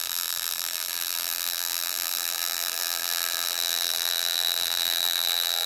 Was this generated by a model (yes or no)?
yes